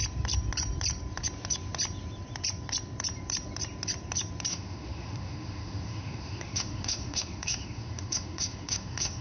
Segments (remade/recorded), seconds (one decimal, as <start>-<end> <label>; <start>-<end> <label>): 0.0-4.5 recorded; 4.5-9.2 remade